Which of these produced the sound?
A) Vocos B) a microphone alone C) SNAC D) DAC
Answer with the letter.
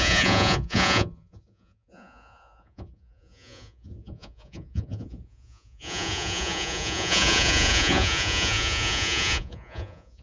A